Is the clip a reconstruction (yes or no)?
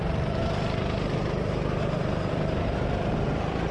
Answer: yes